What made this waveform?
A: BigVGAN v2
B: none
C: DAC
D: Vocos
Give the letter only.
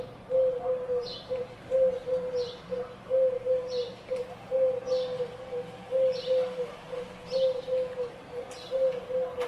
B